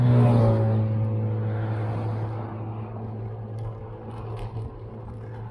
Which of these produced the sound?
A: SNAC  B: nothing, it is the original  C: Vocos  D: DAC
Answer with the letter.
B